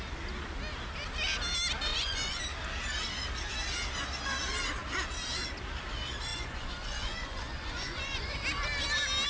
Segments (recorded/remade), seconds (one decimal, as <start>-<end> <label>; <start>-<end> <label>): 0.0-1.9 recorded; 1.9-2.4 remade; 2.4-6.3 recorded; 6.3-8.3 remade; 8.3-9.3 recorded